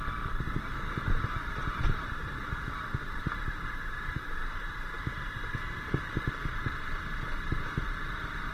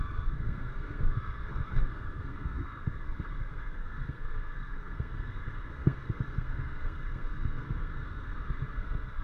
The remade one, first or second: second